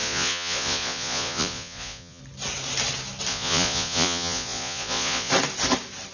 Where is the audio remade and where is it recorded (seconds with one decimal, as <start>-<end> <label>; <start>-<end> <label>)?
0.0-2.2 remade; 2.2-3.3 recorded; 3.3-5.3 remade; 5.3-6.1 recorded